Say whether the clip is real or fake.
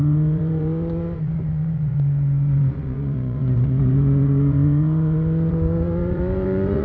fake